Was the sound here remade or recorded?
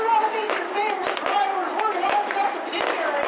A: recorded